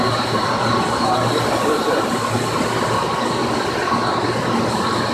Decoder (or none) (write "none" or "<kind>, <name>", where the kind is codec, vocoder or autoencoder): none